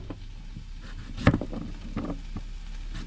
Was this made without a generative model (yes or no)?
yes